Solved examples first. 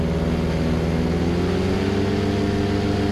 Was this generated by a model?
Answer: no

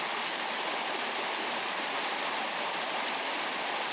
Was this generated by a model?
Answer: no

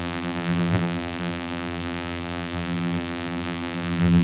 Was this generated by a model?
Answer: yes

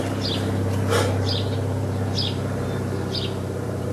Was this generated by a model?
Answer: yes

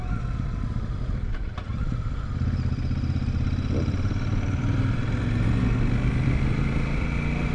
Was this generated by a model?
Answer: yes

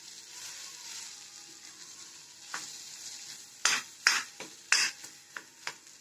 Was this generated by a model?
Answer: no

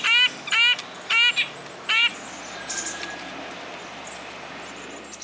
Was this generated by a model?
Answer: no